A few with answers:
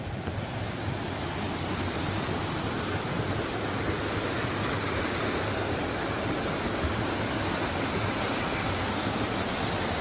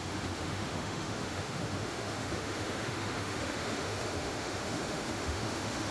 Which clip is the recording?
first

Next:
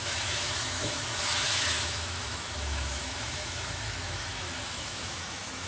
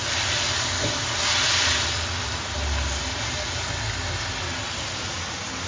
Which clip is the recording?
second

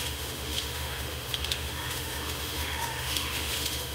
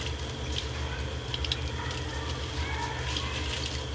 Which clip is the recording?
second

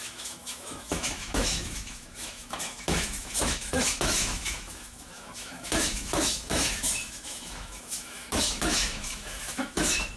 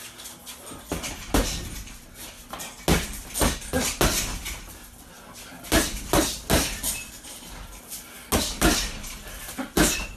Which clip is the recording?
second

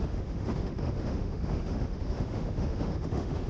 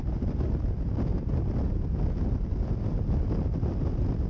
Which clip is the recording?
second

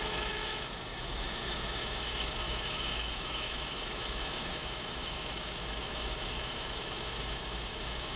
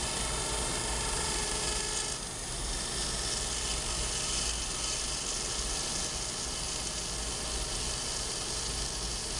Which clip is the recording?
second